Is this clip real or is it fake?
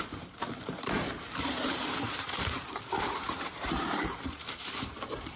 fake